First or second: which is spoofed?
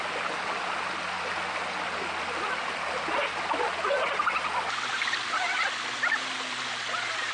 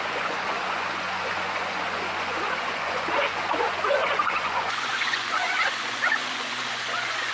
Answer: second